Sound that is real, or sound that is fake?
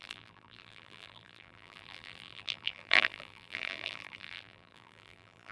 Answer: fake